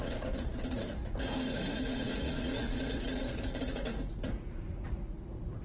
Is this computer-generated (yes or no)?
yes